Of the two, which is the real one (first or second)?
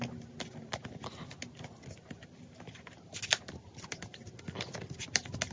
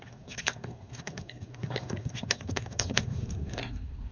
first